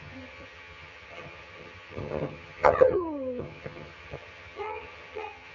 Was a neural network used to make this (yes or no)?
yes